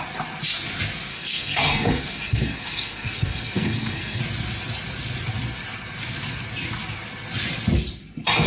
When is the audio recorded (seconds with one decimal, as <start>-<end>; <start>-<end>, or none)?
0.0-1.1; 4.2-8.5